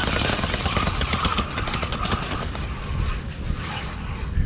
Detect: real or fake real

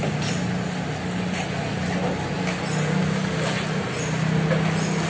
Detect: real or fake real